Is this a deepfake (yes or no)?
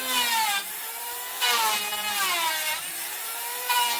yes